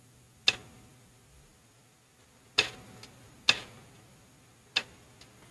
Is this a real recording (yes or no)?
yes